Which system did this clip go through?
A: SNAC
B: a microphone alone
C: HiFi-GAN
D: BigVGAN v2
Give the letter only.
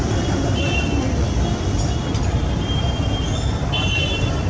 D